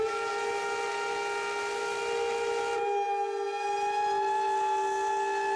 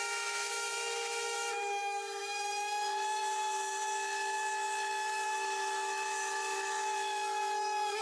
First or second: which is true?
first